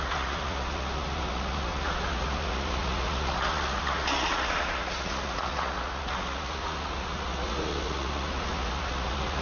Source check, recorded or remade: remade